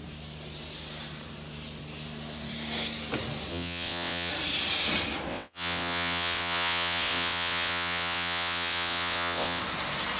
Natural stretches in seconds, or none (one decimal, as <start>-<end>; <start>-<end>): 0.0-3.5; 4.3-5.3; 9.6-10.2